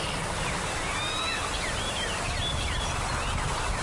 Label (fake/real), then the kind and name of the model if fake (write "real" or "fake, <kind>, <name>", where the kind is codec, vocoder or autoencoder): real